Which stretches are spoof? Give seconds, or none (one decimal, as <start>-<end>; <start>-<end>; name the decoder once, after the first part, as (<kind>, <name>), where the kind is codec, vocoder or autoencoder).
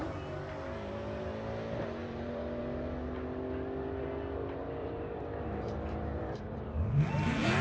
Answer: 2.0-2.6 (vocoder, BigVGAN v2); 4.8-7.1